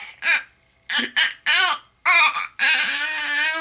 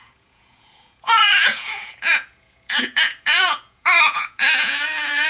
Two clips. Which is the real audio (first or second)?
first